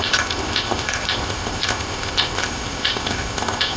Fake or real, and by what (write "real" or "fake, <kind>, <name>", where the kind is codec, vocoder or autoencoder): fake, codec, ZipCodec